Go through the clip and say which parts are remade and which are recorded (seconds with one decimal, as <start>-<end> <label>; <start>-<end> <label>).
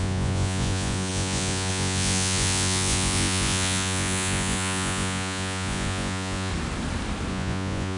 0.0-6.5 remade; 6.5-7.3 recorded; 7.3-8.0 remade